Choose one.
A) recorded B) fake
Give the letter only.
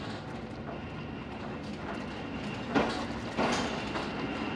A